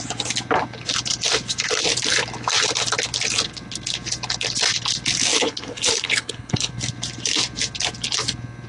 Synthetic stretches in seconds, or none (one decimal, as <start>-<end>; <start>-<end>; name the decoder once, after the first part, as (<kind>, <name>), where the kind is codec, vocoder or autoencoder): 5.3-6.7 (codec, HILCodec)